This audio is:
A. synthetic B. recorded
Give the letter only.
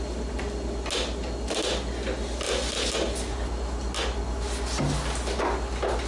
B